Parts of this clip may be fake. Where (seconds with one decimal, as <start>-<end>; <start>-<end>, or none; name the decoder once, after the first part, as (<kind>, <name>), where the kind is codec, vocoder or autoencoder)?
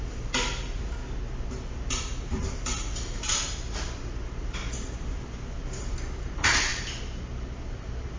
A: 0.0-1.0 (vocoder, BigVGAN v2); 2.0-8.2